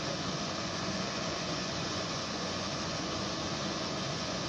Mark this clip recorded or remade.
remade